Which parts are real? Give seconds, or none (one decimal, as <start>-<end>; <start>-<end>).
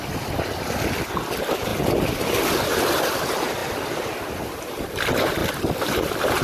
0.0-5.4